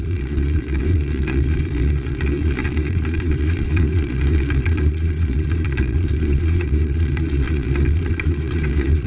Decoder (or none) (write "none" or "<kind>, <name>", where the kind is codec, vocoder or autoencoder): vocoder, Vocos